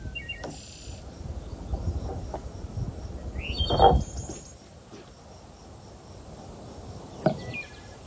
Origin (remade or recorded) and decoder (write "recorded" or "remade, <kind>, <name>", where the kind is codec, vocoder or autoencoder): recorded